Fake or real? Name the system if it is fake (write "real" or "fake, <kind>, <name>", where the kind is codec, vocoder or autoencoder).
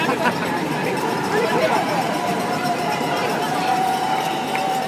fake, vocoder, BigVGAN v2